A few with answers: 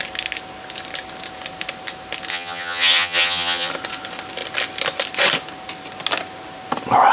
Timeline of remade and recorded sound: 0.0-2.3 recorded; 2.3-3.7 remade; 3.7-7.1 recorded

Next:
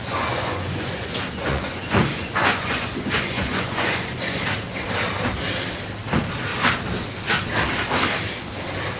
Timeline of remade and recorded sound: 0.0-4.4 remade; 4.4-9.0 recorded

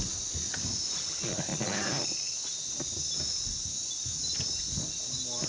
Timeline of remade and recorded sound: 0.0-5.5 recorded

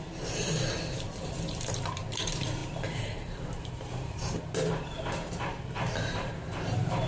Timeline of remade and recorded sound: 0.0-7.1 remade

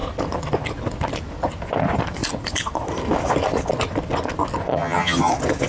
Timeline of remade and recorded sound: 0.0-4.7 recorded; 4.7-5.3 remade; 5.3-5.7 recorded